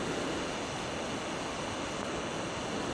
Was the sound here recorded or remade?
recorded